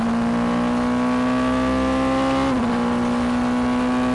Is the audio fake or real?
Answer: real